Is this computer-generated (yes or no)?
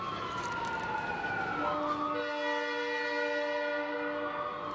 no